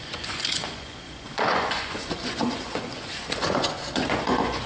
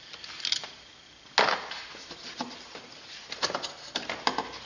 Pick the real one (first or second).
second